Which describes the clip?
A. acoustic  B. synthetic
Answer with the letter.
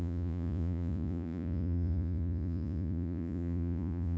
B